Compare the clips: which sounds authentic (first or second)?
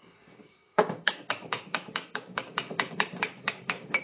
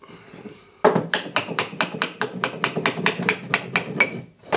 second